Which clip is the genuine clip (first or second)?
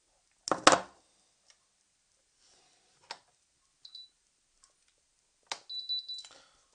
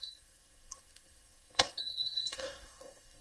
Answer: first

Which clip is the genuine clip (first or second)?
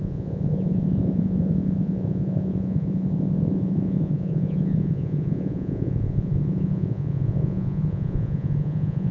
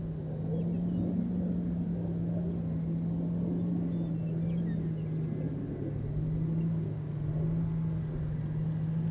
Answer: second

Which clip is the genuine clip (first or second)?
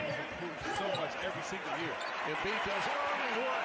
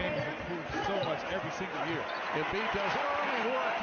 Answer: second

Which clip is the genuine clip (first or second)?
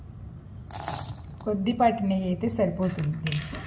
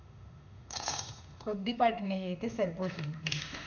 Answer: first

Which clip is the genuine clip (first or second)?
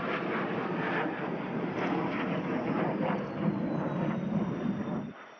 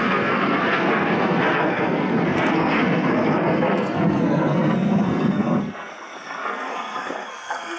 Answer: first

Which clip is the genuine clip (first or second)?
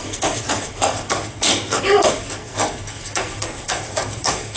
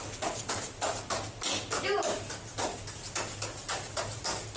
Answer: second